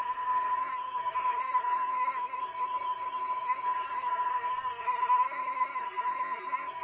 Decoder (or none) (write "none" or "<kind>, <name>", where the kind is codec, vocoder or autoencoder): codec, SNAC